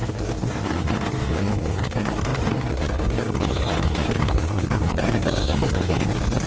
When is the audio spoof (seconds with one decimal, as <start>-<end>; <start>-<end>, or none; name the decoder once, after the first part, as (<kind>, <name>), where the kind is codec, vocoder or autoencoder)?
0.0-6.5 (codec, SNAC)